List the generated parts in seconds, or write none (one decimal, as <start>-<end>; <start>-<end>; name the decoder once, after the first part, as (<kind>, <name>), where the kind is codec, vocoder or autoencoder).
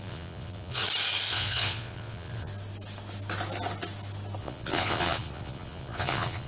0.0-0.8 (vocoder, Vocos); 1.3-2.5; 4.4-6.5